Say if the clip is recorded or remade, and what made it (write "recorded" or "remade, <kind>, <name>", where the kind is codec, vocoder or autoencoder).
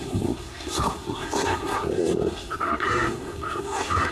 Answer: remade, codec, SNAC